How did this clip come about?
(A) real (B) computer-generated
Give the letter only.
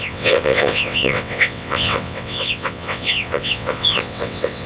B